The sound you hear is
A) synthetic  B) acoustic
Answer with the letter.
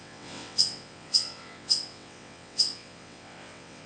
A